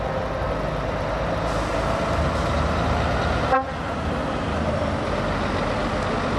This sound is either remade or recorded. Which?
recorded